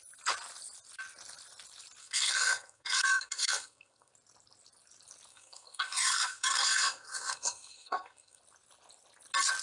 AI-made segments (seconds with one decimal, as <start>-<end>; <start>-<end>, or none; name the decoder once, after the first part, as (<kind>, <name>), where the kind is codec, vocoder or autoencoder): 2.0-4.1 (codec, SNAC); 5.3-8.4